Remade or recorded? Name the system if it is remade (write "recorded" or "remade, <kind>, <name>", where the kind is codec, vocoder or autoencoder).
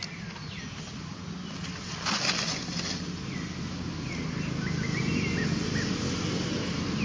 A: recorded